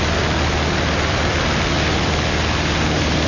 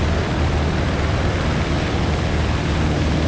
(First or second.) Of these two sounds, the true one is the first